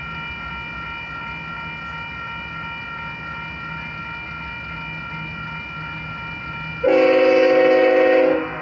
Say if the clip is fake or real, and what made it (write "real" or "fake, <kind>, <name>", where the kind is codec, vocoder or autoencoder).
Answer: real